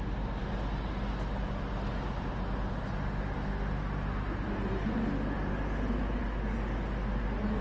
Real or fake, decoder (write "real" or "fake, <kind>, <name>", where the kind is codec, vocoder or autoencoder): real